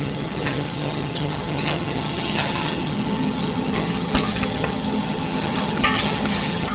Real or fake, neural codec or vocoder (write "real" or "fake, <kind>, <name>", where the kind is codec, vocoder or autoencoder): fake, vocoder, HiFi-GAN